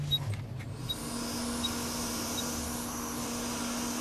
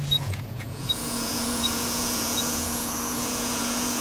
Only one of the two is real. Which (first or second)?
first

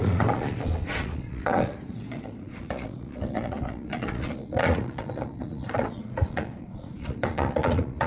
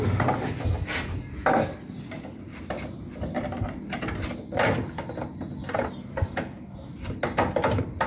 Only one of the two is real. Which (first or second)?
second